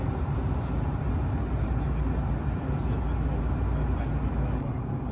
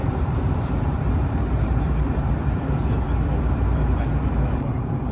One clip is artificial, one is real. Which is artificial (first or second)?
second